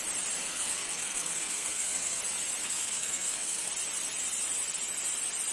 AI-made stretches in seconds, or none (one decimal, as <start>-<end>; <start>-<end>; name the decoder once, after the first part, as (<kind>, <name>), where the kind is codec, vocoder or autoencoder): 0.4-2.2 (codec, SNAC); 2.6-3.7